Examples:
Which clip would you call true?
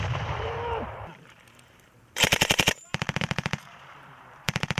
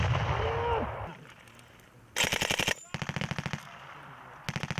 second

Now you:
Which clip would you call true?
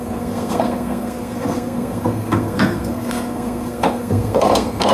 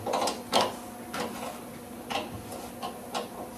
second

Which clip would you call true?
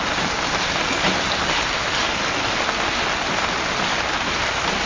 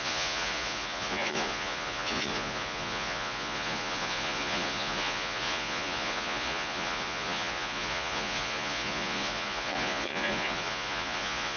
first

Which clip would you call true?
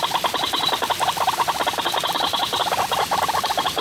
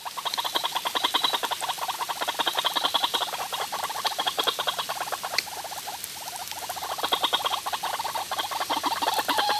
first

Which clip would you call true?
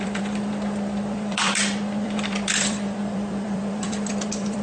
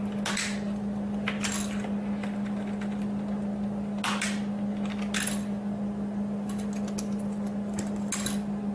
second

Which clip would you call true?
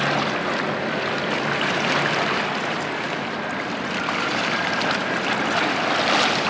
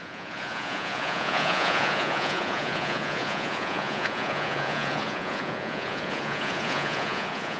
first